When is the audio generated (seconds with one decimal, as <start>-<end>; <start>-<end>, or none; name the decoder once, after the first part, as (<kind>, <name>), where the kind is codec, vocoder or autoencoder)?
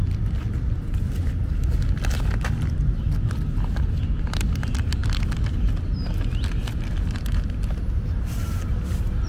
none